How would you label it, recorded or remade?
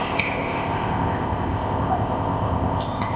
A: remade